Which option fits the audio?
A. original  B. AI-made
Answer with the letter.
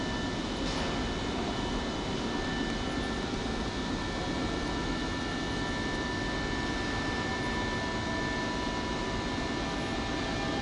A